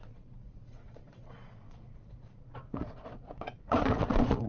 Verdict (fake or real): fake